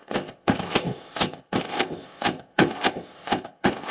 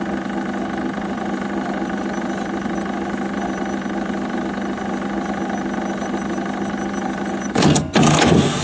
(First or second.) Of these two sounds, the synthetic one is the first